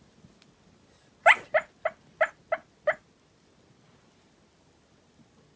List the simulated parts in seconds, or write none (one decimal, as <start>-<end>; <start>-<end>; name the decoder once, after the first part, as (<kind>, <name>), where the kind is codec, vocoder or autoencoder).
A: none